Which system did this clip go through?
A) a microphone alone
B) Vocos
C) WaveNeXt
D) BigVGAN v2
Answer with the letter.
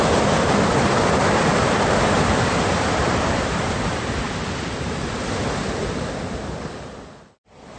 D